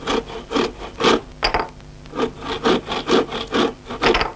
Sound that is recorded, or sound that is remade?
recorded